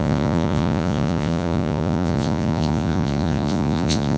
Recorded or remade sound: remade